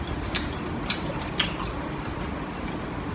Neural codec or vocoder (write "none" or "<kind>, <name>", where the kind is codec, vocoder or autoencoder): none